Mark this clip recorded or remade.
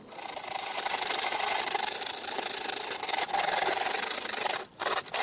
recorded